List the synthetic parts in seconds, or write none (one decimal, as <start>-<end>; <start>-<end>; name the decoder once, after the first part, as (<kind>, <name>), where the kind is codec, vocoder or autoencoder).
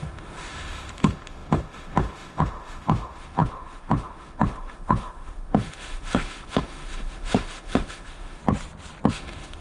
0.0-8.4 (autoencoder, DAC-VAE); 9.1-9.6